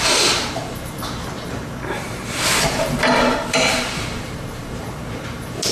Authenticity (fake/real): fake